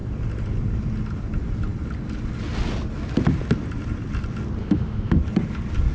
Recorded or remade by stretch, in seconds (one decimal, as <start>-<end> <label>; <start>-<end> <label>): 0.0-4.6 recorded; 4.6-5.2 remade; 5.2-5.9 recorded